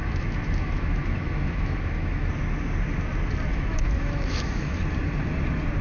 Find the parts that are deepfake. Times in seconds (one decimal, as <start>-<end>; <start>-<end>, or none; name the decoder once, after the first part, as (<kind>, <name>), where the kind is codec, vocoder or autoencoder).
0.0-2.3 (autoencoder, DAC-VAE); 3.5-4.8